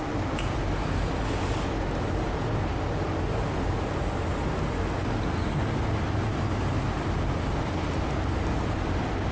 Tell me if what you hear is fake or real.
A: real